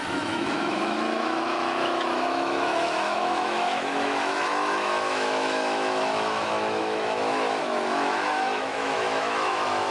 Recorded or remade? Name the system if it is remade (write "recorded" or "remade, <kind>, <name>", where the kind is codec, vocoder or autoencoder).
remade, autoencoder, DAC-VAE